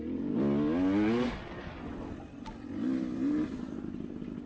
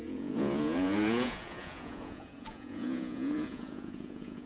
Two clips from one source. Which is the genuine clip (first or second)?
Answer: first